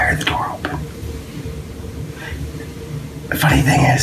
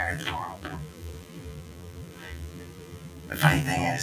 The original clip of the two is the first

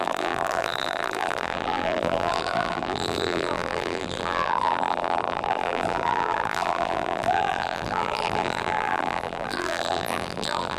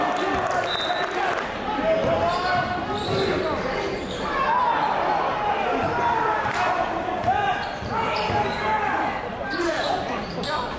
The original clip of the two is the second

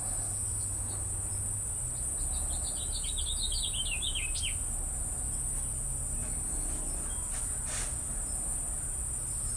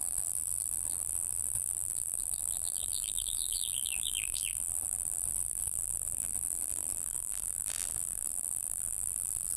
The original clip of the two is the first